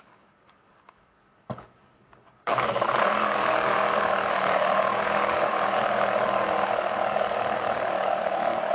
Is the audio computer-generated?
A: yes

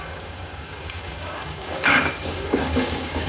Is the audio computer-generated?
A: yes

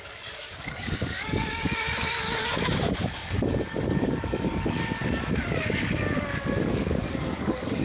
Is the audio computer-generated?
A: yes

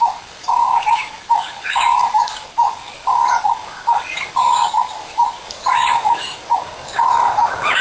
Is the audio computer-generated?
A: yes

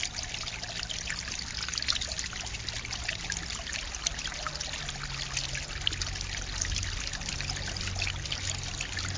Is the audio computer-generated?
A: no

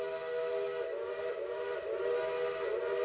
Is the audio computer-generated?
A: no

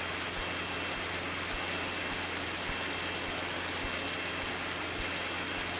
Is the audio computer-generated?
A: no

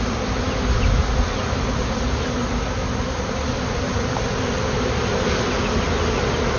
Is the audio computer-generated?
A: no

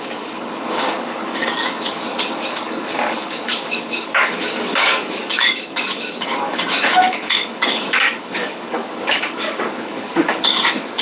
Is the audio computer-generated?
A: yes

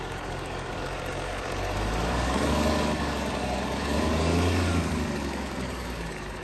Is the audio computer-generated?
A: yes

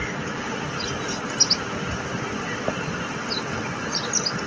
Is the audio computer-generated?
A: no